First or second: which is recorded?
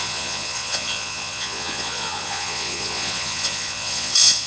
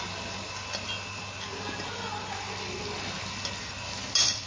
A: second